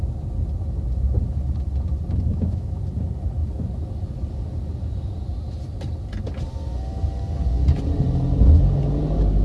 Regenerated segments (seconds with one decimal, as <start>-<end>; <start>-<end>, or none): 2.3-2.8